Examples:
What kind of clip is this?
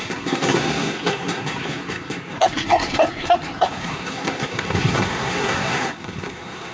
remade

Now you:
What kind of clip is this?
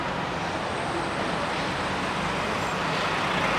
recorded